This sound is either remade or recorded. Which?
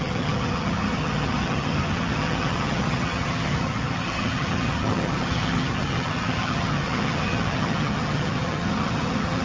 remade